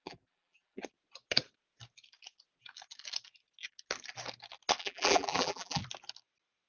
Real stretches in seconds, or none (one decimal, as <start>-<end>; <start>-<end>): 0.8-4.8; 5.8-6.7